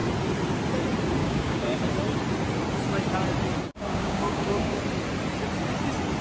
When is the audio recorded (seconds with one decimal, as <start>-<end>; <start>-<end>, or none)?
0.0-1.2; 1.9-3.7; 4.8-6.2